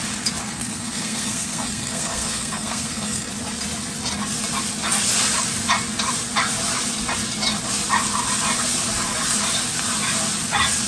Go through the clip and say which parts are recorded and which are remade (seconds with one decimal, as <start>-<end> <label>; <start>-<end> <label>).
0.0-0.4 recorded; 0.4-3.3 remade; 3.3-10.9 recorded